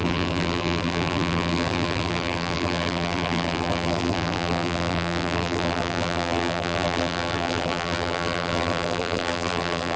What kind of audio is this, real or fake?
fake